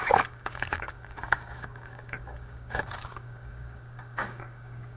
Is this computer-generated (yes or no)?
yes